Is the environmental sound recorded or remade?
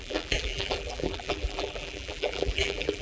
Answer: remade